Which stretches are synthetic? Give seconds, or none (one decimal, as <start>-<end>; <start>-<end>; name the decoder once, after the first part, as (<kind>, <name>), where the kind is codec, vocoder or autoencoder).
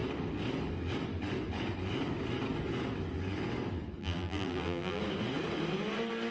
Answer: 4.0-5.0 (vocoder, BigVGAN v2)